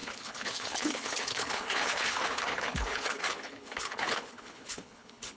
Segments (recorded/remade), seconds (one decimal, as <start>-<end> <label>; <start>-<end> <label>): 0.0-5.4 remade